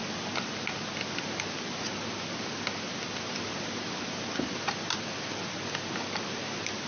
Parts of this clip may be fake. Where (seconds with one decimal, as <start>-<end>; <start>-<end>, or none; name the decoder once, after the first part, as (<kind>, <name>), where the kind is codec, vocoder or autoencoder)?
none